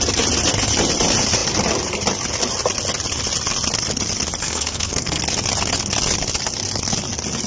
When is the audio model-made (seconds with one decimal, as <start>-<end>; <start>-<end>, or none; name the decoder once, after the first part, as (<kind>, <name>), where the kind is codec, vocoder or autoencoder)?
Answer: 4.4-5.2 (codec, SNAC)